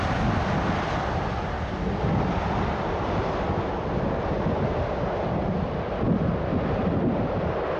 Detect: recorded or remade recorded